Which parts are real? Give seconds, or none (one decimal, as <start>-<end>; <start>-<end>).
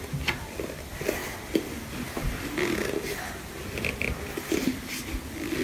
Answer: 0.0-5.6